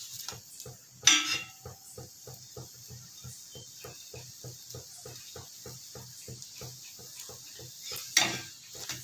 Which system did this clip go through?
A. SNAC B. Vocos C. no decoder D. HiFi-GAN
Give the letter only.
C